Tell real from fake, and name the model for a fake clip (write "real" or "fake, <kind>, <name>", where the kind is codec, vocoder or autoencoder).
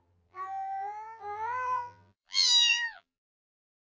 fake, vocoder, BigVGAN v2